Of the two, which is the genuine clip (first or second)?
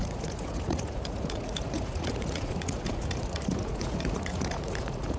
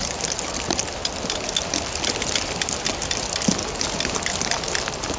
second